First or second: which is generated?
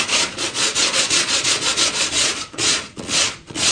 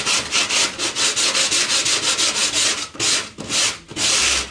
first